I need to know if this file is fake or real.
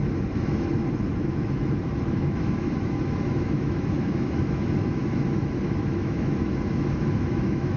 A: fake